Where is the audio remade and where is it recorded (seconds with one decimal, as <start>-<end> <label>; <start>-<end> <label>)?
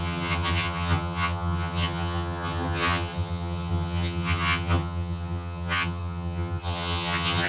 0.0-7.5 remade